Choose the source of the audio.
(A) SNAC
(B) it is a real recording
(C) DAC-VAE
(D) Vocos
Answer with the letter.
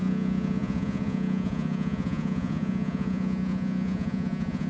D